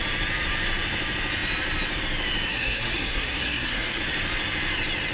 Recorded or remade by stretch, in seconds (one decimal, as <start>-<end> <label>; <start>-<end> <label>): 0.0-2.5 recorded; 2.5-4.0 remade; 4.0-5.1 recorded